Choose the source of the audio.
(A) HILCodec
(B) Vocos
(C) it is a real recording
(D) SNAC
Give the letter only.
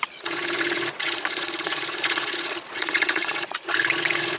B